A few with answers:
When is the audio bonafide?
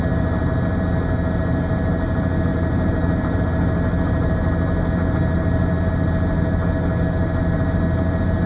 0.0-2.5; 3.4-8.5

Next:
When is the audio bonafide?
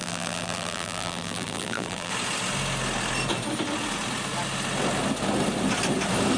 2.1-6.4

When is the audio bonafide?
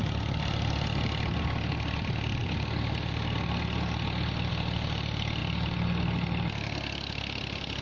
0.0-7.8